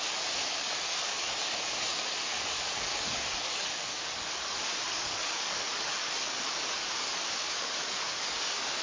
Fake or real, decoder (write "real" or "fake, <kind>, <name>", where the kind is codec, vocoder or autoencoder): fake, codec, DAC